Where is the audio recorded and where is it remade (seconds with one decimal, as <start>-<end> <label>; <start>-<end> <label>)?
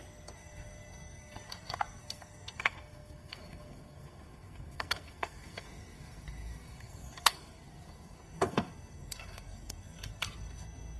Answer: 0.0-11.0 remade